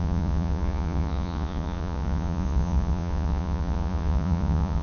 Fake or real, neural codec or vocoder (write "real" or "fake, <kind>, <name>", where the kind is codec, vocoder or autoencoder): fake, vocoder, Vocos